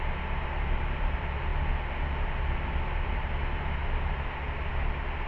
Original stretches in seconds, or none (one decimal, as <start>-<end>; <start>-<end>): 0.0-5.3